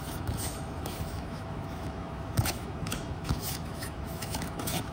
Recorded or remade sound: remade